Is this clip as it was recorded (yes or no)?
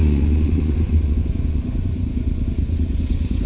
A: no